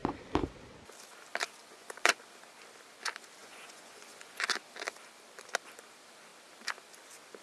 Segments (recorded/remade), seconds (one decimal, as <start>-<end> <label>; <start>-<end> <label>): 0.0-1.6 recorded; 1.6-2.2 remade; 2.2-3.4 recorded; 3.4-4.4 remade; 4.4-7.4 recorded